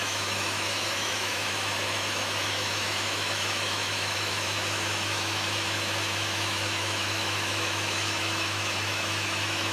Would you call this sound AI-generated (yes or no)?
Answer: yes